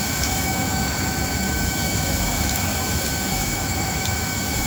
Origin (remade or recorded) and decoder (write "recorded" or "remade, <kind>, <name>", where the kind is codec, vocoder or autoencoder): remade, autoencoder, DAC-VAE